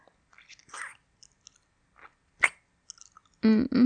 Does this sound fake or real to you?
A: real